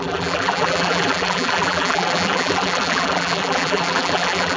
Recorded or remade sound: remade